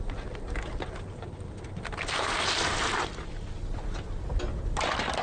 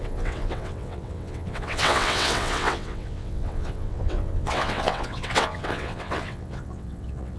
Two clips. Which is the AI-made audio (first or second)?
second